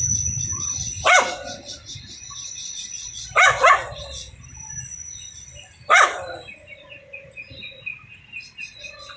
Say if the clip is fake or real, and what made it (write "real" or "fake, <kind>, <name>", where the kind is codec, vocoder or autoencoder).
real